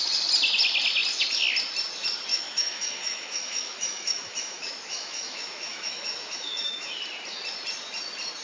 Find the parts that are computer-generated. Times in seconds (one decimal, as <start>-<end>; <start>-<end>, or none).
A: 2.3-7.0